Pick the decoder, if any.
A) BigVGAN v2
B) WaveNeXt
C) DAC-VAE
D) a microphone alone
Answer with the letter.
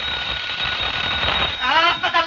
A